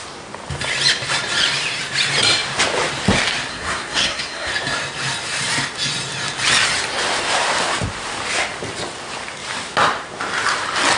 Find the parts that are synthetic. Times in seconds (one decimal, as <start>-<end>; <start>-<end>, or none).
3.5-4.5